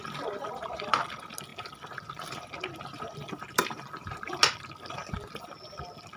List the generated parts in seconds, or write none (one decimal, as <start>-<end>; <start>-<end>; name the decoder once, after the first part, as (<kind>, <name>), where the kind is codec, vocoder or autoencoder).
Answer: 1.5-4.3 (vocoder, BigVGAN v2); 5.0-5.8